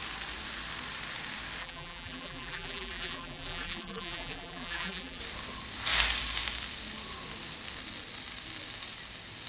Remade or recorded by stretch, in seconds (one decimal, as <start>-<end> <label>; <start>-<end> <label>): 0.0-1.6 recorded; 1.6-5.2 remade; 5.2-9.5 recorded